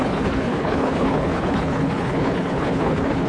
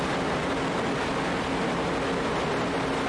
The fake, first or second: first